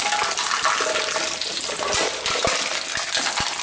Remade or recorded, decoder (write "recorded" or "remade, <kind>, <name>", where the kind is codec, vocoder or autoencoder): recorded